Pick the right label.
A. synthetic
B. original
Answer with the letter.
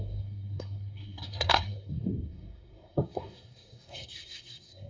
A